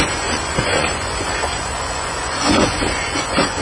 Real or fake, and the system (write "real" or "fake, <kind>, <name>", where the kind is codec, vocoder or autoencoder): fake, vocoder, Vocos